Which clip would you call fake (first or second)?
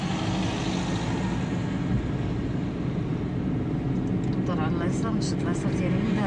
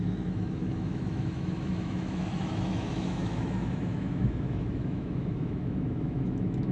second